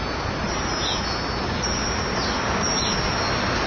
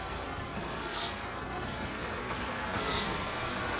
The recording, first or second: first